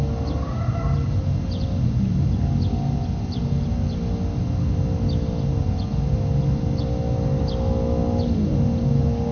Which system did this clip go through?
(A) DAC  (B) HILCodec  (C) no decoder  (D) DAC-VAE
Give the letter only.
C